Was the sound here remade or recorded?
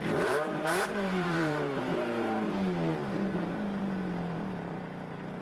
remade